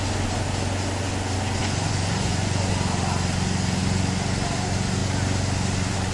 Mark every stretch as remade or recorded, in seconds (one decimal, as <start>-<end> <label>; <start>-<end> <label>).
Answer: 0.0-1.6 recorded; 1.6-2.7 remade; 2.7-6.1 recorded